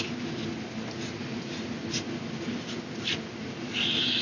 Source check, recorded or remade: recorded